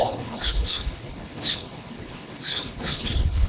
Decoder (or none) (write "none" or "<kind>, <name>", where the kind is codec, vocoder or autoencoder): codec, HILCodec